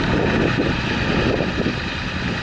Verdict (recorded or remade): recorded